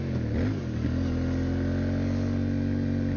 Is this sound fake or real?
real